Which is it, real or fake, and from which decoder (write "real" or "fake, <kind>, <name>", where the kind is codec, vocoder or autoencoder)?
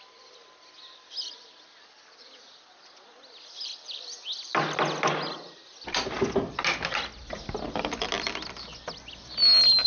real